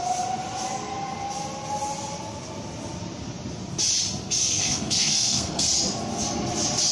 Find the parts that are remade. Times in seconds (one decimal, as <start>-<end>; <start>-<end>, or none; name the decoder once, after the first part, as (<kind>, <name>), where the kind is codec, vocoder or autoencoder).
4.4-5.7 (codec, SNAC)